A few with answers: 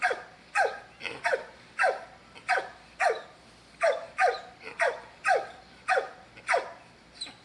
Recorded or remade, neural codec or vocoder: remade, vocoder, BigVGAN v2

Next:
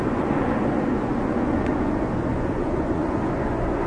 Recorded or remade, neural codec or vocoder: remade, vocoder, Vocos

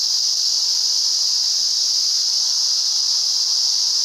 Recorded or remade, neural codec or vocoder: recorded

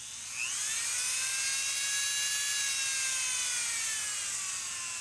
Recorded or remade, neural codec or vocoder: recorded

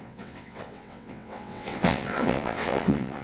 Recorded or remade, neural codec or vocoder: remade, vocoder, WaveNeXt